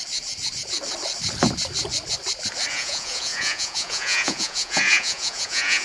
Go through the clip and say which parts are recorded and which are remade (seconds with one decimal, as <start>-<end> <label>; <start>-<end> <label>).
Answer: 0.0-2.7 recorded; 2.7-5.8 remade